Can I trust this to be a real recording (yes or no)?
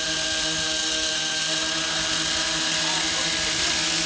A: yes